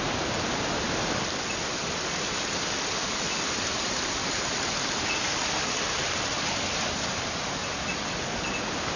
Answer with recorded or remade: recorded